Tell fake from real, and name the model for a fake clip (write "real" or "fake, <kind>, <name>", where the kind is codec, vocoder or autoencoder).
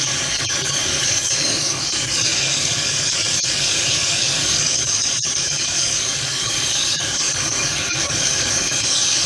fake, codec, DAC